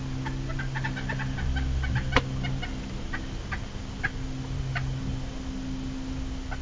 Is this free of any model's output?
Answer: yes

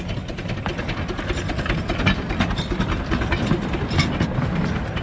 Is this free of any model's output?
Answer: yes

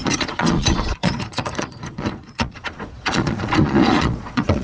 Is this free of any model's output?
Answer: no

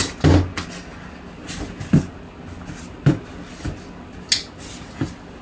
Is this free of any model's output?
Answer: yes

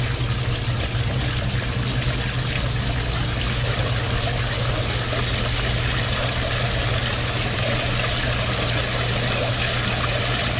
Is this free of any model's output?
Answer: yes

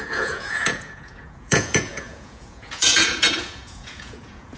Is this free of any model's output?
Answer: no